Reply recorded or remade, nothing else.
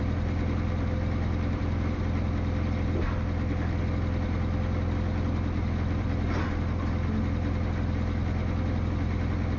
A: recorded